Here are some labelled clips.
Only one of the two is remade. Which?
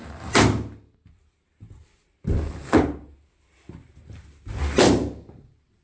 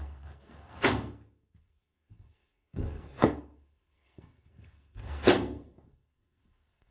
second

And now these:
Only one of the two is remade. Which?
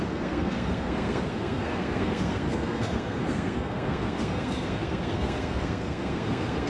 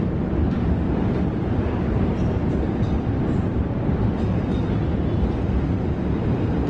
first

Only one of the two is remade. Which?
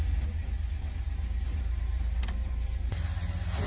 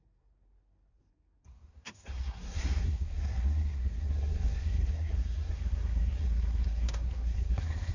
second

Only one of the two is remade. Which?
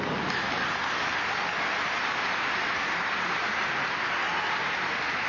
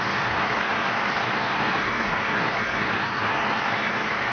second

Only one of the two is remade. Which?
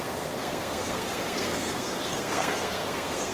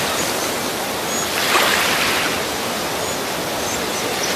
first